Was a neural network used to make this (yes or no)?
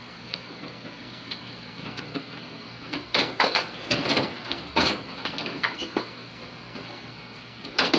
yes